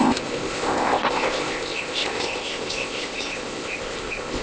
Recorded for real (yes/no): no